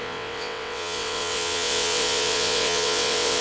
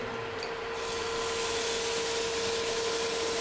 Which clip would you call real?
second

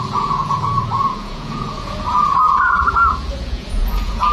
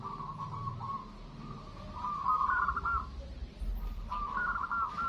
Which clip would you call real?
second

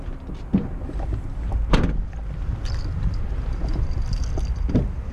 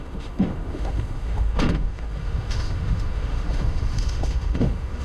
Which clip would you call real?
first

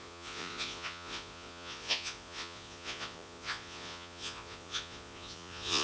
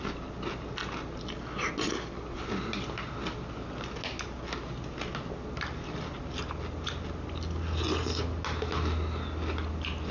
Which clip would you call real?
second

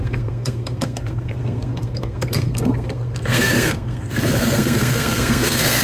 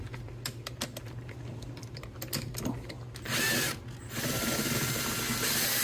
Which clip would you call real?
second